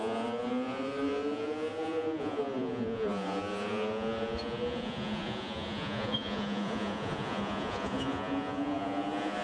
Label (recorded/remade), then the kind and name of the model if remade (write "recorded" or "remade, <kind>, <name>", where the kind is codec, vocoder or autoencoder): remade, vocoder, Vocos